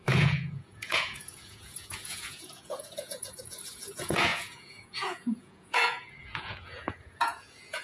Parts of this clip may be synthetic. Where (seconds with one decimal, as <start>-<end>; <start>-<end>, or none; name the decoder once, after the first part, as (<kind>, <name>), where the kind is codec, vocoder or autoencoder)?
0.0-7.8 (vocoder, Vocos)